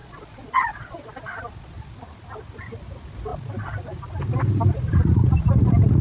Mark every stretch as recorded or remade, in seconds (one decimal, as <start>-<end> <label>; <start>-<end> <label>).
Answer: 0.0-1.1 remade; 1.1-6.0 recorded